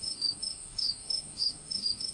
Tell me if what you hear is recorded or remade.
remade